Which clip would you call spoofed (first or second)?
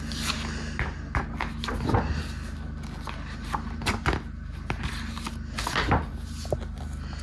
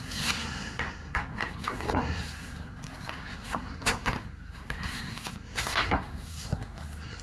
second